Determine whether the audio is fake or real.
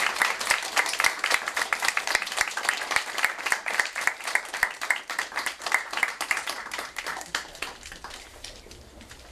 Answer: fake